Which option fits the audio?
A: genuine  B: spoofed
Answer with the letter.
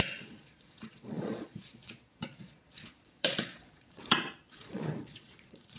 B